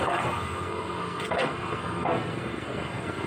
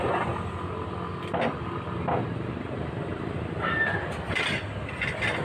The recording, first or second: second